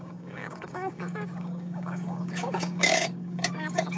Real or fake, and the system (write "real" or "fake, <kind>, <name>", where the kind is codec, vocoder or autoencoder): fake, codec, DAC